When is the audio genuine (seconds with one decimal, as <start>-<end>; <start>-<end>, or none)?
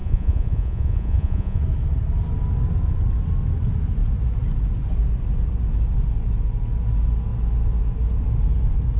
1.6-9.0